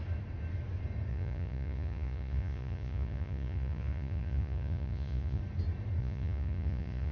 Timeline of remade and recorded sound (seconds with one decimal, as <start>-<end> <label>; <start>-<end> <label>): 0.0-1.1 recorded; 1.1-5.4 remade; 5.4-6.0 recorded; 6.0-7.1 remade